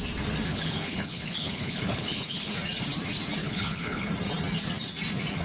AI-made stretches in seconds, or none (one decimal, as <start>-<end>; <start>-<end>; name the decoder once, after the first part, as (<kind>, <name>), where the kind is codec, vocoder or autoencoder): 0.5-2.5 (codec, HILCodec); 3.4-4.1